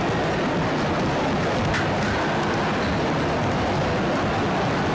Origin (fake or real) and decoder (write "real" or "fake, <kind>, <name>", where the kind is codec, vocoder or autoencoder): real